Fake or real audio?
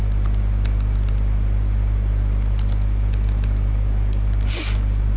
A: real